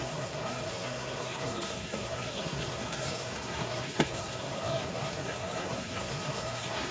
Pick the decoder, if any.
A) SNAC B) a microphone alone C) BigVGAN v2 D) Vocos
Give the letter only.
A